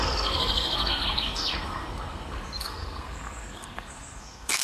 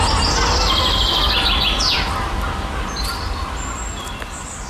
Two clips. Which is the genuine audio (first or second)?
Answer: second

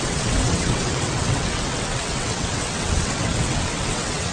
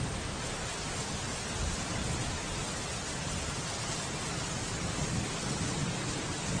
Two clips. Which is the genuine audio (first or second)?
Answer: second